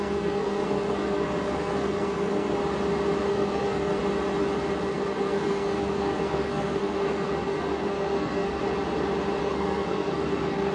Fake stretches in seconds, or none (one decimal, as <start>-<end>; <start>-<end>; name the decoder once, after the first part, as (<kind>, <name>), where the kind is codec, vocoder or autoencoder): 0.0-2.6 (codec, SNAC); 3.3-4.0; 4.9-8.6; 9.4-10.7